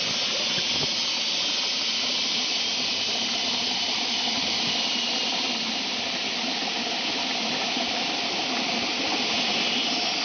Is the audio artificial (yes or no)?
no